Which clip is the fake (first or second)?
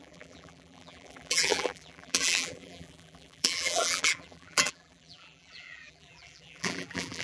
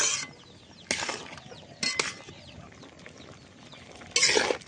first